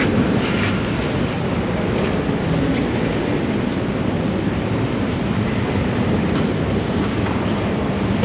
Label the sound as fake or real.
real